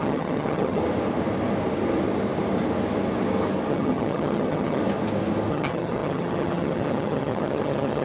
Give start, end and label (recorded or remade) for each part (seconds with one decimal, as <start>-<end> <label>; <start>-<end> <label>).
0.0-0.8 remade; 0.8-3.7 recorded; 3.7-4.8 remade; 4.8-5.5 recorded; 5.5-8.0 remade